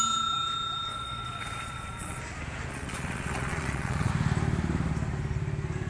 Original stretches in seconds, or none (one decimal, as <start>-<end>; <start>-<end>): 0.0-0.9; 2.2-2.7; 4.1-5.9